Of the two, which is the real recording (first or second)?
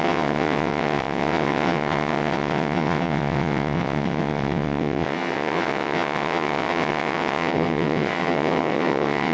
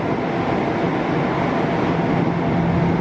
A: second